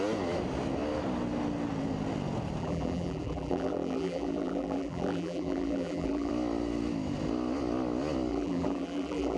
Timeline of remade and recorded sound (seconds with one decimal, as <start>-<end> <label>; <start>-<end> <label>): 0.0-2.6 recorded; 2.6-6.3 remade; 6.3-8.3 recorded; 8.3-9.4 remade